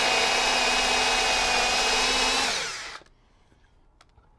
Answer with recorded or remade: recorded